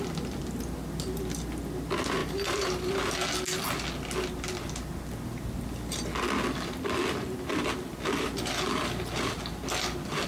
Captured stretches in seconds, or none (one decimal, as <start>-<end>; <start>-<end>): 0.0-2.2; 2.9-10.3